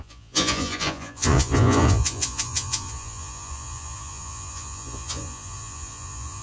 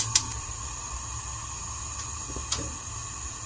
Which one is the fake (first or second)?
first